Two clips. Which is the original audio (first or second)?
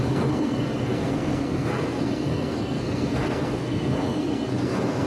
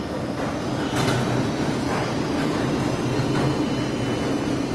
second